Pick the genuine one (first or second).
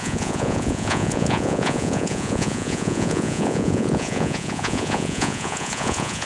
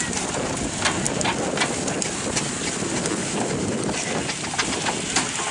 second